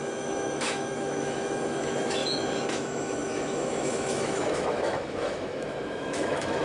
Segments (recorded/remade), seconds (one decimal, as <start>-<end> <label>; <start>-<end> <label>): 0.0-2.2 remade; 2.2-2.7 recorded; 2.7-6.6 remade